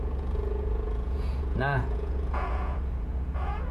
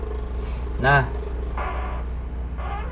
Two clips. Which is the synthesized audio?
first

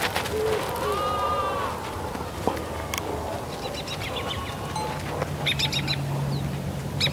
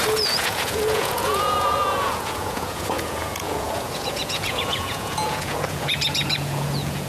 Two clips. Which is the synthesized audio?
second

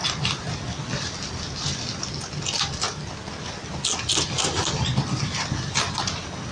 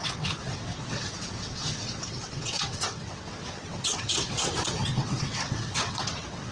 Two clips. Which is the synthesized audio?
second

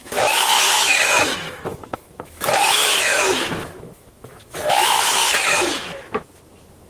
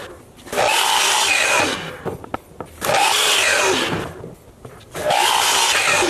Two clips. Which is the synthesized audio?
first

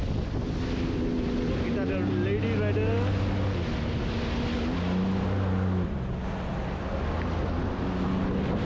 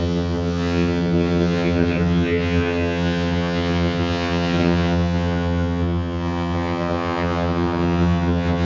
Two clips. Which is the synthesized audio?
second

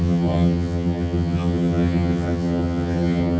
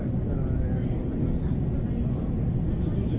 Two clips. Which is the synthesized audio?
first